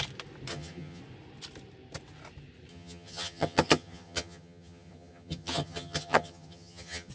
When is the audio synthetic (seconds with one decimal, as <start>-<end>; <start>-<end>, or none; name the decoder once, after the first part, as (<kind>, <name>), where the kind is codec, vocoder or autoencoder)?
0.5-1.0 (vocoder, HiFi-GAN); 2.7-7.1